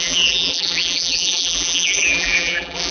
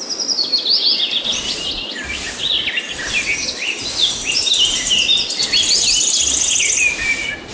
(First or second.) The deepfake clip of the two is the first